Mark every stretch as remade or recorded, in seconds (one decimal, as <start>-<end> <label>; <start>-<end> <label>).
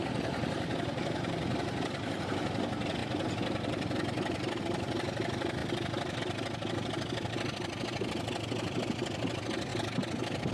0.0-2.2 remade; 2.2-3.0 recorded; 3.0-4.6 remade; 4.6-5.6 recorded; 5.6-6.2 remade; 6.2-10.5 recorded